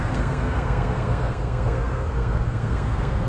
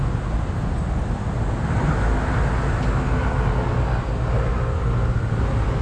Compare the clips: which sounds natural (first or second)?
second